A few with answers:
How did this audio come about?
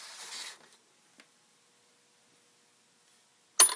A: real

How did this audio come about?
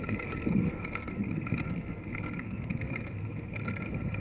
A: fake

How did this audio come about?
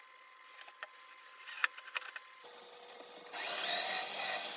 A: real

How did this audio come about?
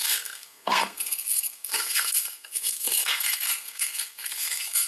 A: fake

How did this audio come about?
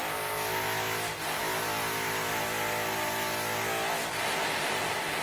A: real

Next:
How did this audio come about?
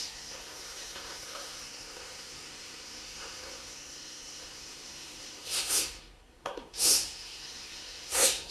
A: fake